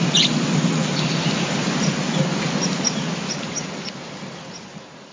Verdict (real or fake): real